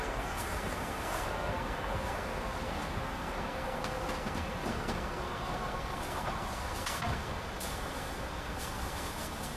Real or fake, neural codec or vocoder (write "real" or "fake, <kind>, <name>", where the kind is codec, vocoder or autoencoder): fake, codec, SNAC